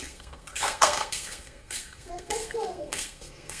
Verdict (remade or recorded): remade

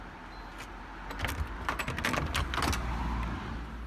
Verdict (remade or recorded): recorded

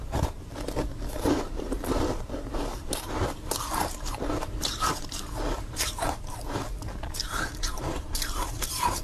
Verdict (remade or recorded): remade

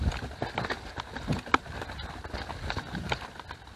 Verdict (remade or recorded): recorded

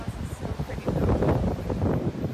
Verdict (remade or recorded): recorded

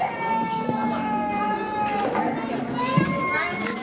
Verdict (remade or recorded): recorded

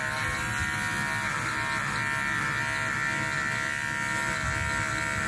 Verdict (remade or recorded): recorded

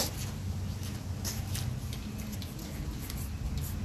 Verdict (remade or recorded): recorded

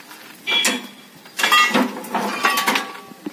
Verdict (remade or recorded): recorded